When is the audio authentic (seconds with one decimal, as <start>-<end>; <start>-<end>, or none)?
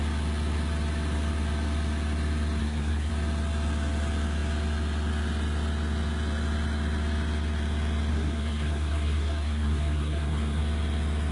0.0-2.6; 3.1-8.1; 10.6-11.3